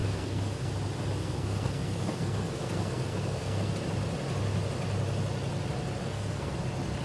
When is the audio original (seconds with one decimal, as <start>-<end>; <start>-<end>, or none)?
0.7-1.2; 3.7-6.0; 6.5-7.0